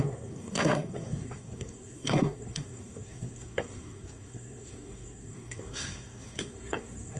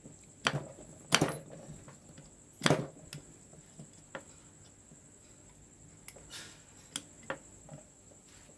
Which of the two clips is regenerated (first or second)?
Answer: first